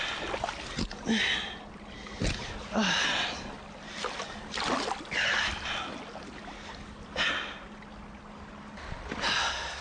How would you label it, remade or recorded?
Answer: recorded